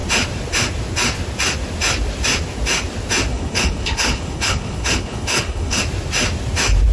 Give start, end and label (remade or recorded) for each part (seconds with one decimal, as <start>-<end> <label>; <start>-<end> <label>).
0.0-3.3 recorded; 3.3-5.8 remade; 5.8-6.9 recorded